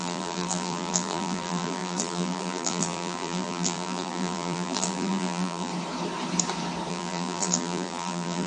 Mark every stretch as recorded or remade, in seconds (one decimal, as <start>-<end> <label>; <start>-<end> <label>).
0.0-5.7 remade; 5.7-6.9 recorded; 6.9-8.5 remade